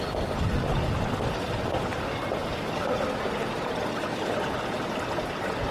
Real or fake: real